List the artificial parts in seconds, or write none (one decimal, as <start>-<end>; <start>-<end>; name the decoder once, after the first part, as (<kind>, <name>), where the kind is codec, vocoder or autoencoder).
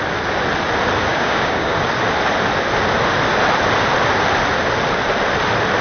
1.1-1.8 (codec, DAC)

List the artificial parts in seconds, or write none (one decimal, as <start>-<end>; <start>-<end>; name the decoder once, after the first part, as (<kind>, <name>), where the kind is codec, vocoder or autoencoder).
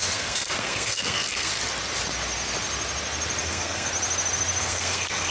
0.0-1.5 (codec, SNAC); 3.4-3.9; 4.6-5.3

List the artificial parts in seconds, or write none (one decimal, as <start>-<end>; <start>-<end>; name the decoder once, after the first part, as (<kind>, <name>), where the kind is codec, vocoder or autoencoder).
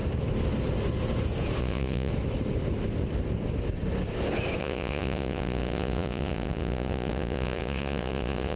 1.6-2.1 (vocoder, Vocos); 4.6-8.6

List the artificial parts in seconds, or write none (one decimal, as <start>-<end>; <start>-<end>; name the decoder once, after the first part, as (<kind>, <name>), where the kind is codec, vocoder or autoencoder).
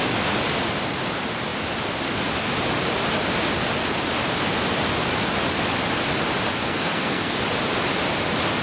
6.6-7.4 (codec, SNAC)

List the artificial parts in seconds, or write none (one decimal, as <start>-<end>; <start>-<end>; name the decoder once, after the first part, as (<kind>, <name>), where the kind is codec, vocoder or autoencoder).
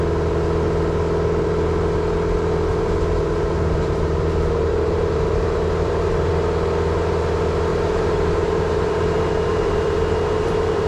2.7-6.3 (vocoder, BigVGAN v2); 7.7-10.9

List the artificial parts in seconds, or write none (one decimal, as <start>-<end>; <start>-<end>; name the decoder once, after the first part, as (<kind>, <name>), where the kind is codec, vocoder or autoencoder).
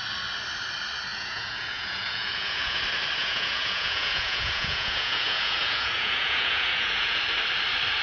1.1-2.8 (vocoder, Vocos); 3.2-7.2